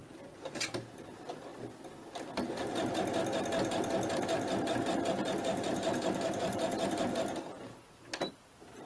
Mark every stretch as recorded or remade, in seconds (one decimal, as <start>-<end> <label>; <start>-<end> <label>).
0.0-0.8 remade; 0.8-5.2 recorded; 5.2-7.0 remade; 7.0-8.9 recorded